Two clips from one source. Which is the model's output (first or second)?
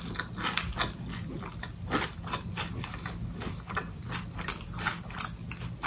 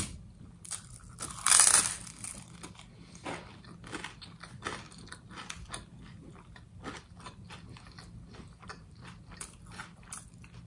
second